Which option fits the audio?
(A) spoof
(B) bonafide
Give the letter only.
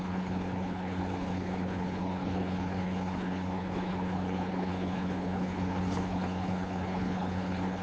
A